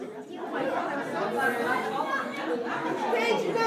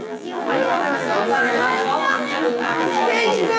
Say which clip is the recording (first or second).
first